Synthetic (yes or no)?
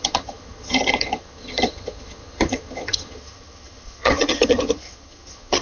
yes